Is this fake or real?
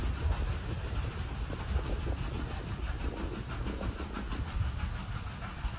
real